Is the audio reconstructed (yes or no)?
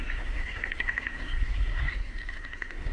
yes